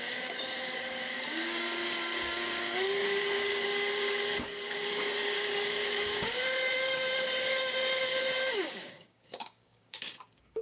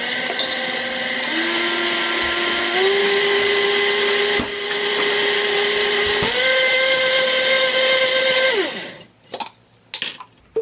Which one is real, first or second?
second